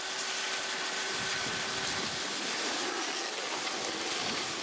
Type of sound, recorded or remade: recorded